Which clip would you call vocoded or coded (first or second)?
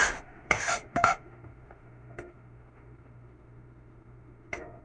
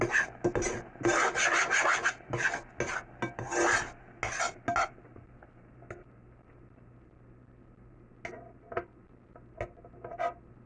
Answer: first